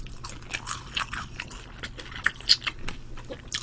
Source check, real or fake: real